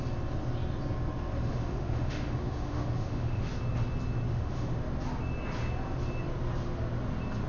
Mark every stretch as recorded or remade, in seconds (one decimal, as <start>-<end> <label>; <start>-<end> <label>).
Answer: 0.0-1.5 recorded; 1.5-3.5 remade; 3.5-4.3 recorded; 4.3-4.8 remade; 4.8-7.5 recorded